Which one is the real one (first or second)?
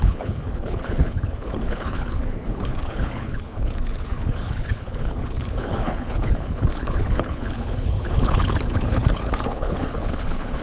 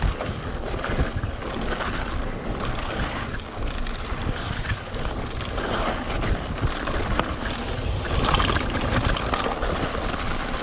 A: second